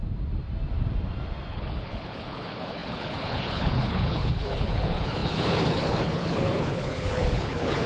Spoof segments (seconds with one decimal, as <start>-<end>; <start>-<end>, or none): 1.5-7.9